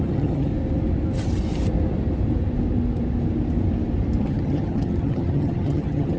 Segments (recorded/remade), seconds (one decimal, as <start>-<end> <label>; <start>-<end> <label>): 0.0-0.5 remade; 0.5-4.2 recorded; 4.2-6.2 remade